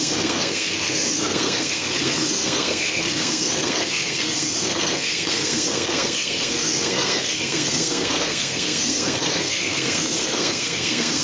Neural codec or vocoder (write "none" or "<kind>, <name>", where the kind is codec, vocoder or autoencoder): codec, SNAC